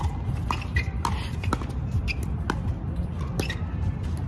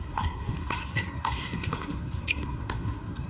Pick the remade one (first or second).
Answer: second